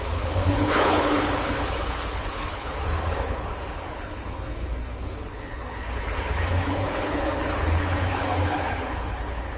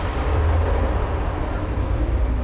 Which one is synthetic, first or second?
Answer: first